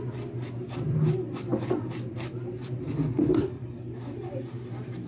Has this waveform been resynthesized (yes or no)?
no